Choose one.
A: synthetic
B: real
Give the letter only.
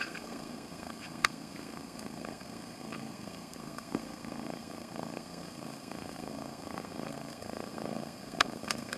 A